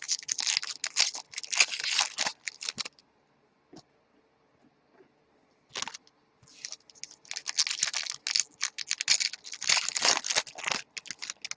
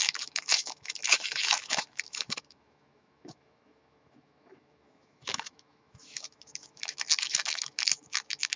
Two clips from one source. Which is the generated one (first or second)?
second